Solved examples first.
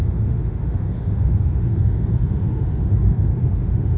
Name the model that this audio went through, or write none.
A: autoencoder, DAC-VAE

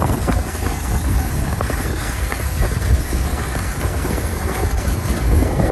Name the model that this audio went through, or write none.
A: codec, SNAC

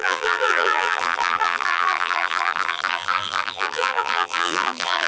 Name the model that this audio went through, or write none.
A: vocoder, BigVGAN v2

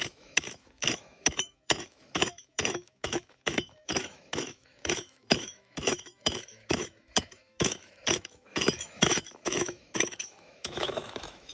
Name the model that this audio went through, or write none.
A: autoencoder, DAC-VAE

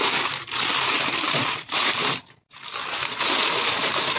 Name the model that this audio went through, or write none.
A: vocoder, BigVGAN v2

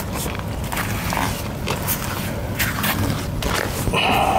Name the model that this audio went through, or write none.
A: none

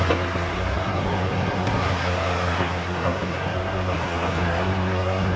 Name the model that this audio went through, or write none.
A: codec, SNAC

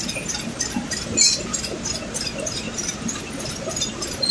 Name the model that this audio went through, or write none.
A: none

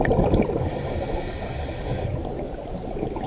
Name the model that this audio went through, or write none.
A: none